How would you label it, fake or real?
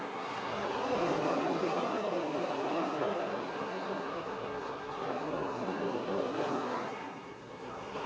fake